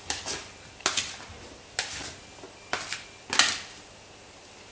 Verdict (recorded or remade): recorded